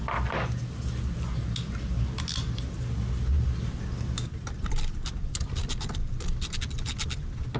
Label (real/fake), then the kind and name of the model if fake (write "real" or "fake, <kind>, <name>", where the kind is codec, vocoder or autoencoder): real